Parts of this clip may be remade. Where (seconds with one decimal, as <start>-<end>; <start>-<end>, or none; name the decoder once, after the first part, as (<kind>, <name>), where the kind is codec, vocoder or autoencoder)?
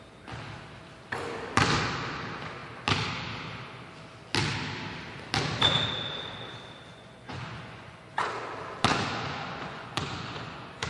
6.9-8.3 (vocoder, Vocos); 8.9-10.9